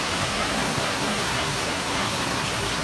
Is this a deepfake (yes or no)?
yes